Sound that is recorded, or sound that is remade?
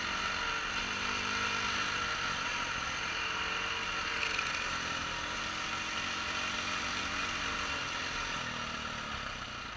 recorded